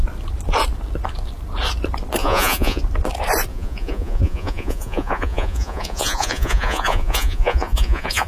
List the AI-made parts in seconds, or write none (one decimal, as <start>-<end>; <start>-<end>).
2.2-2.8; 3.5-8.3